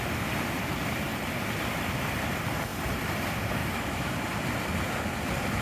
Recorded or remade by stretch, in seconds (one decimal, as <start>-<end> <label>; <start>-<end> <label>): 0.0-3.6 recorded; 3.6-4.1 remade; 4.1-5.6 recorded